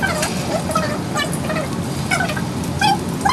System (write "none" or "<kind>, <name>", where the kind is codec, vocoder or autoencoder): none